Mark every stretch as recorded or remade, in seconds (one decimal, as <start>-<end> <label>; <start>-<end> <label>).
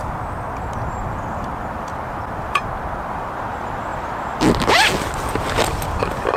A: 0.0-1.0 recorded; 1.0-2.6 remade; 2.6-6.4 recorded